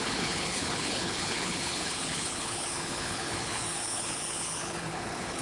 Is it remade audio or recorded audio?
remade